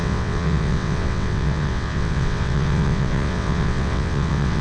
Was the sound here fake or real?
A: fake